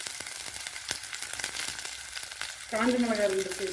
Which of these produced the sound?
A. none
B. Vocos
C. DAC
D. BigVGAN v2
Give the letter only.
A